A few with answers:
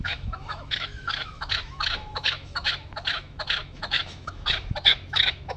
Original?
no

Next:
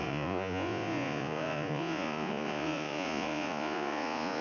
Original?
no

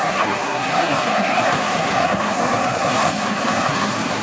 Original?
no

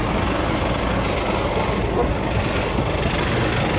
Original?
yes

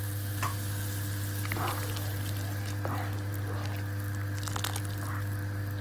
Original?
yes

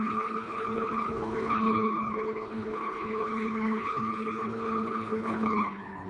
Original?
no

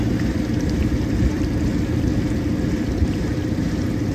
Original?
yes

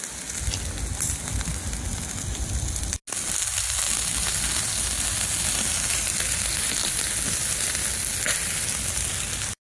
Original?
yes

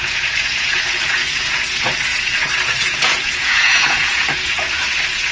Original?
no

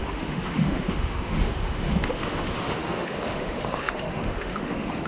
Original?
no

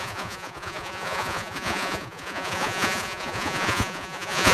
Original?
no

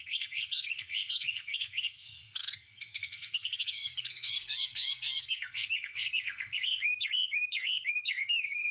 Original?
no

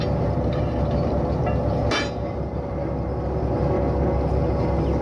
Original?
yes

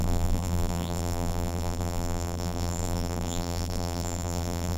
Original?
no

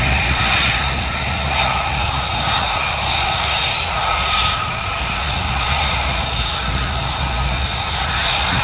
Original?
no